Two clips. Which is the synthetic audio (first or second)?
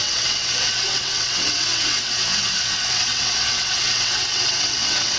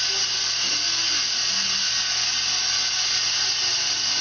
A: first